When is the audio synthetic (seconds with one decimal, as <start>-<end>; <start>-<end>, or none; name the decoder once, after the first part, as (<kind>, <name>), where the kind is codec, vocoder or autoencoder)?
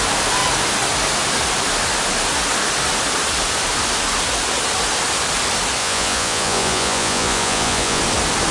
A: 5.8-8.0 (vocoder, Vocos)